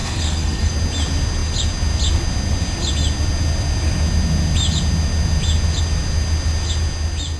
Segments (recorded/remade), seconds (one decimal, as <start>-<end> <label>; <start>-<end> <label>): 0.0-0.7 remade; 0.7-7.4 recorded